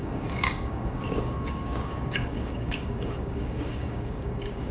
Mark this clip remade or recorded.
remade